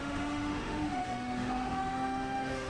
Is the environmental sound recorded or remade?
remade